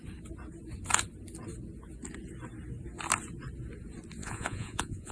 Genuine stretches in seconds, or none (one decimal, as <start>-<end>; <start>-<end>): 0.0-4.2